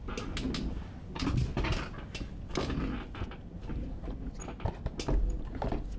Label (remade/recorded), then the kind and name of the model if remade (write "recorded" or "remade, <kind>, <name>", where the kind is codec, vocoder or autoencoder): recorded